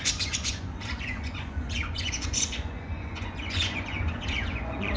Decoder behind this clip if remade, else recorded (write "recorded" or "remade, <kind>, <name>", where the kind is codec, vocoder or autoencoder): remade, vocoder, Vocos